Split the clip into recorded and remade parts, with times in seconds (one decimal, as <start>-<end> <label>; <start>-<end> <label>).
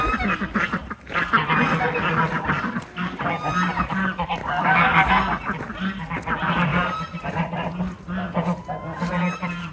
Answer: 0.0-4.4 recorded; 4.4-5.1 remade; 5.1-9.7 recorded